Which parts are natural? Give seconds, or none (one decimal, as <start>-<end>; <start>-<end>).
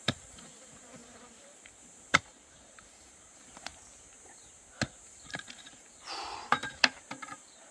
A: 3.7-5.1